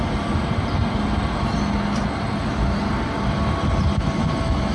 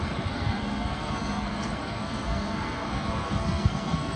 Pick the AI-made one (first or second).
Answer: second